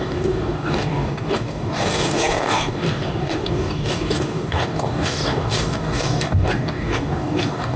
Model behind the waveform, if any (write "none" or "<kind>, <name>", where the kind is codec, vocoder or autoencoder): codec, DAC